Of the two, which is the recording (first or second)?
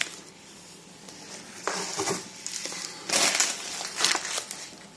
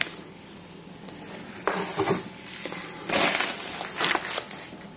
second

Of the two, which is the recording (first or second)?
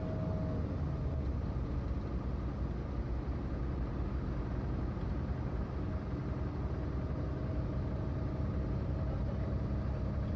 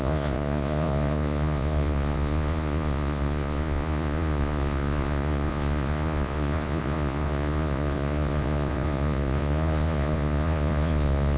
first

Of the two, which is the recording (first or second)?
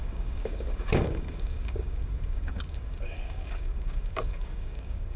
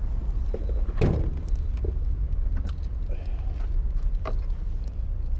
second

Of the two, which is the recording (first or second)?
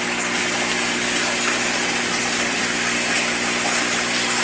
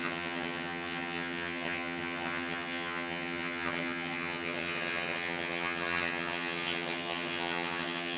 first